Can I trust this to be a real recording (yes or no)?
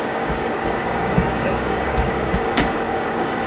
no